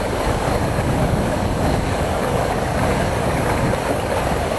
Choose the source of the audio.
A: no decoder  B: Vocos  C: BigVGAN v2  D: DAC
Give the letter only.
D